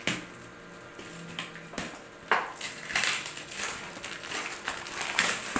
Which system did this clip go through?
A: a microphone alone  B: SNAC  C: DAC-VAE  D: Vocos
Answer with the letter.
A